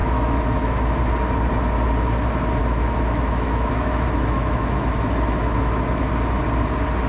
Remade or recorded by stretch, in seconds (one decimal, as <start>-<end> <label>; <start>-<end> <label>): 0.0-1.0 remade; 1.0-2.6 recorded; 2.6-6.0 remade; 6.0-7.1 recorded